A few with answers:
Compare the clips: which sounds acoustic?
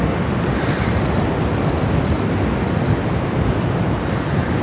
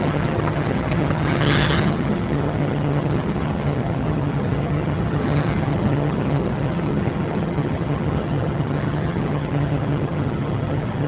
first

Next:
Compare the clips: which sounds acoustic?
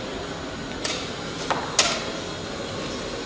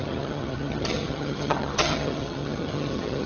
first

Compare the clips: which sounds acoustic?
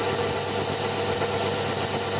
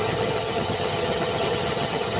first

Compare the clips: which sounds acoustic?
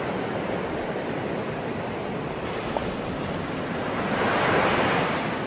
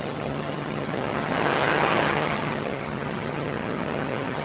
first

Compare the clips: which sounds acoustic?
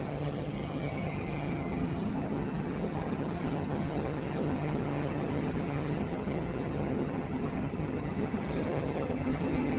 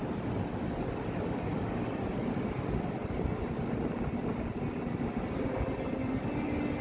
second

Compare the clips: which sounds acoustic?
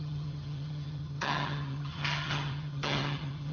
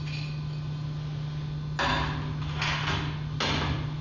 second